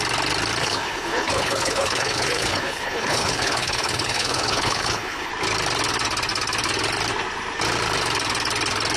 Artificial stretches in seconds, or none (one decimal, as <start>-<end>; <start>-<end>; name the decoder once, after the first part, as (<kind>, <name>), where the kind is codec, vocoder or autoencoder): 0.6-5.3 (codec, HILCodec)